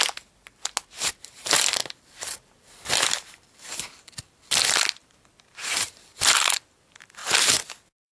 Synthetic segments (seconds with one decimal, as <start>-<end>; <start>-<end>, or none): 1.8-4.6; 5.0-6.8; 7.2-8.1